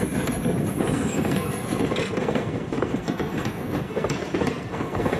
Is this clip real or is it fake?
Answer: fake